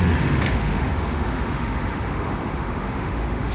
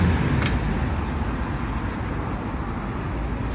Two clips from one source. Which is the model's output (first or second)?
first